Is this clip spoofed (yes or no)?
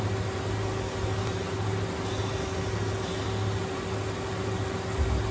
no